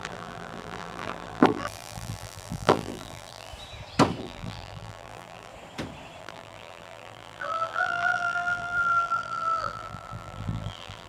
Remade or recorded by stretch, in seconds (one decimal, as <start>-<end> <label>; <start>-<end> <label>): 0.0-3.5 remade; 3.5-4.2 recorded; 4.2-5.5 remade; 5.5-6.2 recorded; 6.2-11.1 remade